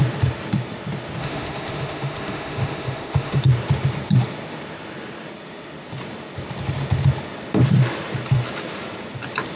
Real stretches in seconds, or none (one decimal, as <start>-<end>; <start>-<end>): 0.0-1.2; 3.4-9.6